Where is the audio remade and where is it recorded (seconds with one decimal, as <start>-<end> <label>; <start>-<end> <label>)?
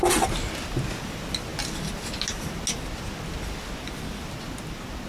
0.0-5.1 recorded